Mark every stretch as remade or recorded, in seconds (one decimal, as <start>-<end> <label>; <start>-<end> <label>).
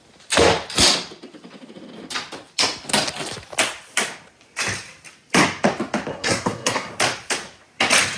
0.0-6.1 recorded; 6.1-6.9 remade; 6.9-8.2 recorded